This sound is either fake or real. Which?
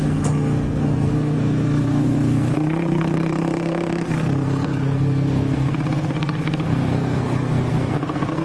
fake